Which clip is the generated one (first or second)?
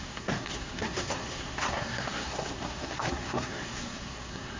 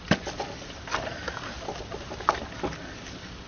first